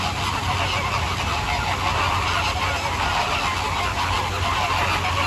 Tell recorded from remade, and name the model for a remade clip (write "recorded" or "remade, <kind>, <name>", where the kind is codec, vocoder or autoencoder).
recorded